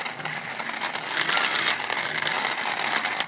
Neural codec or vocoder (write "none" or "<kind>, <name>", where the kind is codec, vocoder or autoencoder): none